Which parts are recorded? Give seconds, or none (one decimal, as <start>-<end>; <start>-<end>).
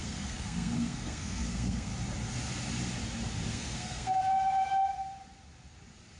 1.9-3.5; 4.3-6.2